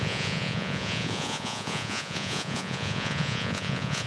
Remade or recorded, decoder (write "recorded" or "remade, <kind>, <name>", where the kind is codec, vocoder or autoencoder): remade, vocoder, Vocos